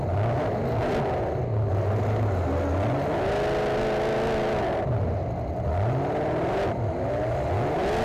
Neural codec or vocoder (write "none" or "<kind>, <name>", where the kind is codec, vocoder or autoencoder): none